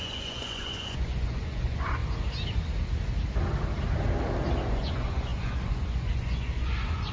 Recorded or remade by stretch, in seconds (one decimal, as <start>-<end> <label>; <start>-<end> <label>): 0.0-2.0 remade; 2.0-4.7 recorded; 4.7-7.1 remade